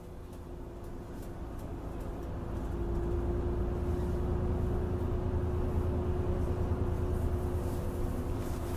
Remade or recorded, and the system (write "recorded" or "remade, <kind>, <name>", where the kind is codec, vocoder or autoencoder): recorded